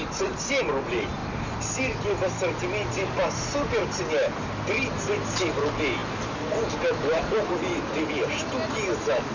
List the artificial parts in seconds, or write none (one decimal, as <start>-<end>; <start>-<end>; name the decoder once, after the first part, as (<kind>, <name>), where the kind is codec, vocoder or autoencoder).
none